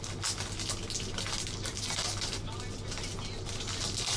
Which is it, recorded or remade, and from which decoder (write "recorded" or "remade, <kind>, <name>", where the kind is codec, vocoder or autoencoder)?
recorded